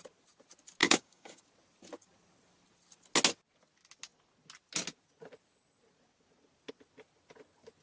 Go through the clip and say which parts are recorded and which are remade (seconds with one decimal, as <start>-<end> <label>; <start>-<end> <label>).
0.0-0.8 recorded; 0.8-1.4 remade; 1.4-7.8 recorded